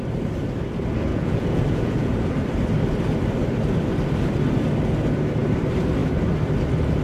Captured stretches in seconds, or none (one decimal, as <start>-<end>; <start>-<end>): 0.0-1.1; 2.1-7.0